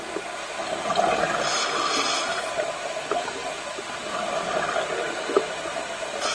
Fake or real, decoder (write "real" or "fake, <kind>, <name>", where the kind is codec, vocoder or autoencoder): real